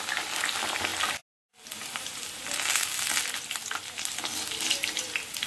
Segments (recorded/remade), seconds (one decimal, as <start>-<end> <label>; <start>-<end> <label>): 0.0-5.5 recorded